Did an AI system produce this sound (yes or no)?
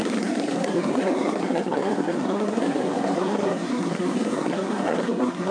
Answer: yes